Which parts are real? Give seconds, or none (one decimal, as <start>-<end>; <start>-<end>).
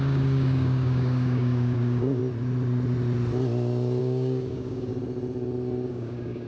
2.2-4.0; 4.9-5.9